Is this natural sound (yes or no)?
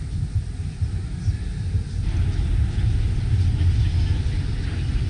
yes